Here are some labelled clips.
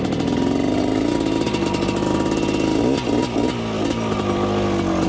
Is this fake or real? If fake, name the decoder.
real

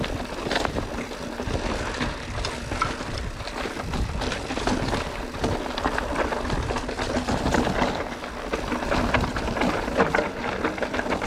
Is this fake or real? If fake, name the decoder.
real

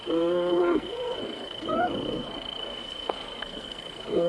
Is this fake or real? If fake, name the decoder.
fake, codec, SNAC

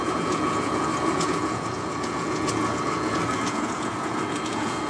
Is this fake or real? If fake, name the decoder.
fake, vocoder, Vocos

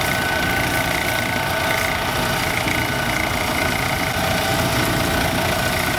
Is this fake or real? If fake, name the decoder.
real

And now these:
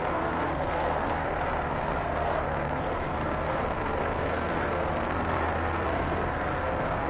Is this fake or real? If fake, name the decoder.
fake, codec, SNAC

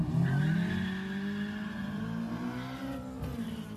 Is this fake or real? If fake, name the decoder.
real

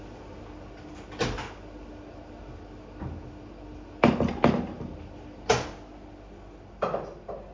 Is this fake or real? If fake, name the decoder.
real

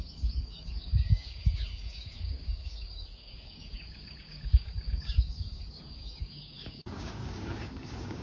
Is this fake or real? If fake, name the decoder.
fake, codec, DAC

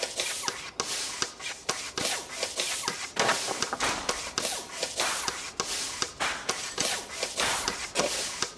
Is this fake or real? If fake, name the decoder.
real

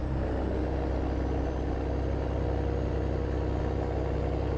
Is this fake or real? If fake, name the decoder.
real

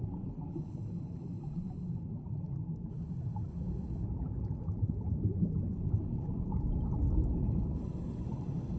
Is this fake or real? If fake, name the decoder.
real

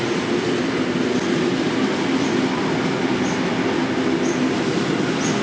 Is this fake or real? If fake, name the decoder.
real